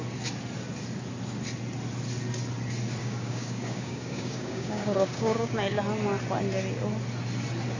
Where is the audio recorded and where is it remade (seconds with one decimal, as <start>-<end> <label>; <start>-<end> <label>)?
0.0-3.0 recorded; 3.0-5.8 remade; 5.8-7.8 recorded